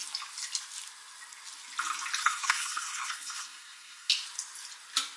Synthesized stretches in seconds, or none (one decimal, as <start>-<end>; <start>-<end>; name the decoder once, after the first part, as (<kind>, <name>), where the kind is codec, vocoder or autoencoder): 2.2-4.1 (codec, SNAC)